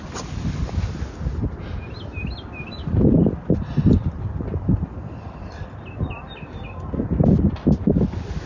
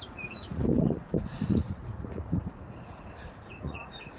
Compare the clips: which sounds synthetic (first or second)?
second